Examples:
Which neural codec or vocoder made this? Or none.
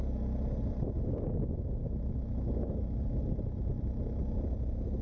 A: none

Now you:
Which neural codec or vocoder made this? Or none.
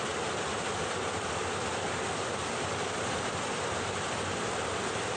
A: none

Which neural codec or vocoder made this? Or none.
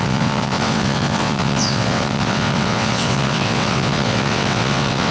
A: vocoder, WaveNeXt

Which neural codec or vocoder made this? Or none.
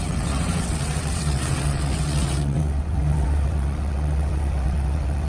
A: vocoder, WaveNeXt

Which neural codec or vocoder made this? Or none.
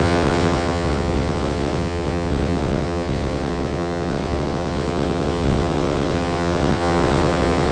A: vocoder, WaveNeXt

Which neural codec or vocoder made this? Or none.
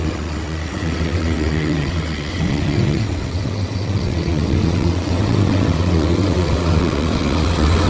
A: vocoder, WaveNeXt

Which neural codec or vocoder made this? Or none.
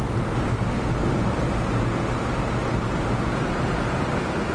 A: none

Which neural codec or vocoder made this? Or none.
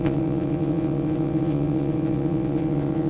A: vocoder, WaveNeXt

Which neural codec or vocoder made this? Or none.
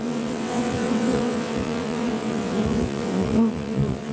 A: vocoder, WaveNeXt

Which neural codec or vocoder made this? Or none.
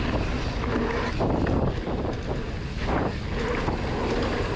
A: none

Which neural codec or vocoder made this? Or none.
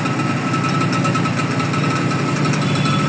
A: none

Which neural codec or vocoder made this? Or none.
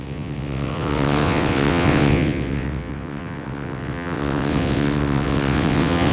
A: vocoder, WaveNeXt